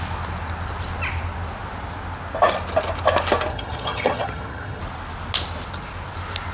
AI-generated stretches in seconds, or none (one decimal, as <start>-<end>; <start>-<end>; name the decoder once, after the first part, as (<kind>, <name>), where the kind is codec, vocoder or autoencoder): 3.5-4.8 (vocoder, HiFi-GAN)